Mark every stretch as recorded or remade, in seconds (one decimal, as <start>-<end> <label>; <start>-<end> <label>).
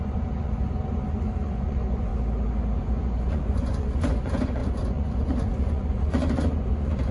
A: 0.0-2.1 remade; 2.1-2.8 recorded; 2.8-7.1 remade